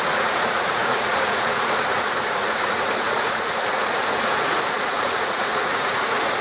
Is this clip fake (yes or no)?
yes